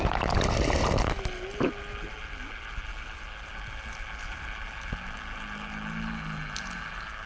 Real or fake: real